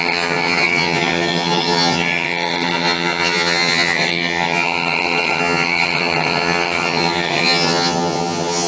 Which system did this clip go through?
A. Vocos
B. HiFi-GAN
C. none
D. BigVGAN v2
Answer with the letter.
B